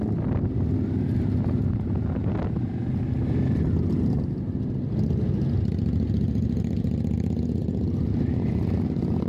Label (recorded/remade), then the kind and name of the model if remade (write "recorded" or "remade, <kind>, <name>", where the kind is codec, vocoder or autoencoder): recorded